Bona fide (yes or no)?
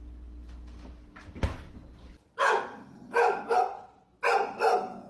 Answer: yes